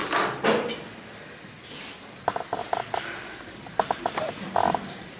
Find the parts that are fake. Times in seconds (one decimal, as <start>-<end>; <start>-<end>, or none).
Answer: none